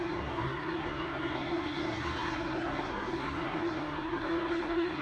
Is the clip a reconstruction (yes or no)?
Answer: yes